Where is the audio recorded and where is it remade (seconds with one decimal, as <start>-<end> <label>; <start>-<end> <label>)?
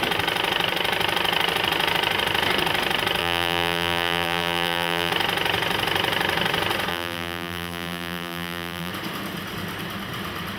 0.0-3.2 recorded; 3.2-5.1 remade; 5.1-6.9 recorded; 6.9-8.9 remade; 8.9-10.6 recorded